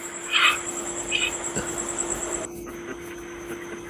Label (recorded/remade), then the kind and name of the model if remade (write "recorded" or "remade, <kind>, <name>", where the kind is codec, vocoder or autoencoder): recorded